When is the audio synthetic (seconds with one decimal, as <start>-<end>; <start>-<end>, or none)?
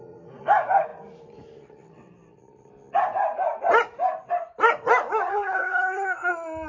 5.3-6.3